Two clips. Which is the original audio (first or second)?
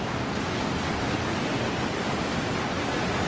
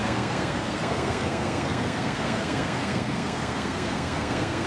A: first